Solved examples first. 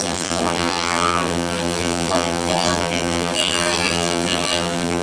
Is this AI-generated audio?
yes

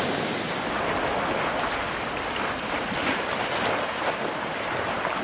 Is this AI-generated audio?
no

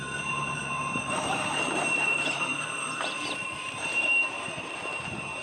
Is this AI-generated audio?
yes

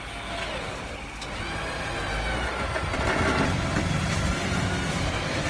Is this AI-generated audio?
no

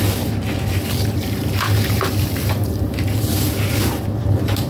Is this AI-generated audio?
yes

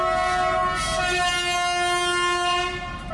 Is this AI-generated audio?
no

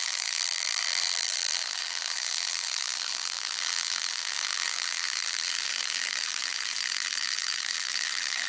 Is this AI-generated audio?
yes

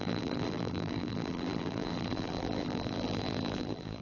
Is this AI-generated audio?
yes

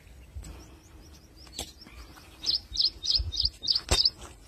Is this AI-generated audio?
no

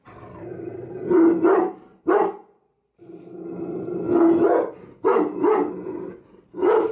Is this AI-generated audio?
no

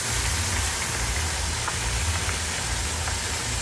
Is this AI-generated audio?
no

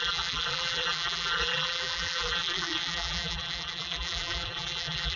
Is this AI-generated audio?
yes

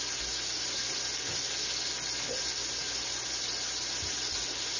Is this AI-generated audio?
no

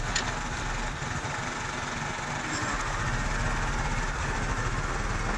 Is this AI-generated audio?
no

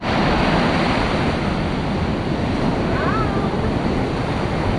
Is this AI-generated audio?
no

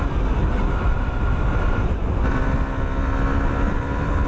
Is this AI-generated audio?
yes